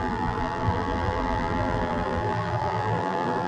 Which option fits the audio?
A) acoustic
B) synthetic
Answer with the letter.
B